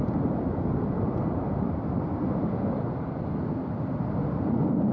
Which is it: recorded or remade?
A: recorded